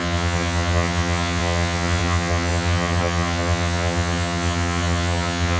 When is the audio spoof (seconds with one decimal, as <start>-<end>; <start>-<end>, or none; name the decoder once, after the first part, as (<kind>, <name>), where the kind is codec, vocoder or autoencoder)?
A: 0.0-5.6 (vocoder, HiFi-GAN)

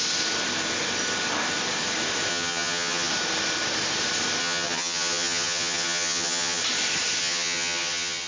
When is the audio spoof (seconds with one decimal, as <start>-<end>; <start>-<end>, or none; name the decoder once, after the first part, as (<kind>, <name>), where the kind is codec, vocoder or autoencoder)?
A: 2.3-3.1 (vocoder, HiFi-GAN); 4.4-6.6; 7.2-8.3

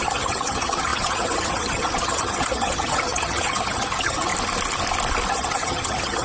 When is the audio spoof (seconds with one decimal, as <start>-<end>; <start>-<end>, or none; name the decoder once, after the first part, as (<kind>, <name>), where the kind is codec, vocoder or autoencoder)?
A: 0.0-4.3 (vocoder, HiFi-GAN); 5.3-6.2

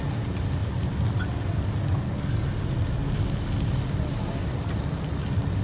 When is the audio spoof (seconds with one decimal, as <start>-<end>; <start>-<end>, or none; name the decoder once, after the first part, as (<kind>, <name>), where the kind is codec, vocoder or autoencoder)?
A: none

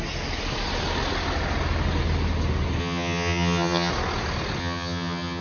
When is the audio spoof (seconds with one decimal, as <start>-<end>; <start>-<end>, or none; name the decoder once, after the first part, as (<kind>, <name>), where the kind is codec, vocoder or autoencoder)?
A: 2.8-3.9 (vocoder, HiFi-GAN); 4.6-5.4

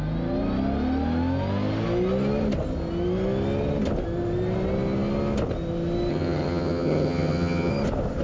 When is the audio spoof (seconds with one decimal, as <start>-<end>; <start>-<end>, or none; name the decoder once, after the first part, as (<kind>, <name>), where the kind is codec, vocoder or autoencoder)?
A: 6.1-7.7 (vocoder, HiFi-GAN)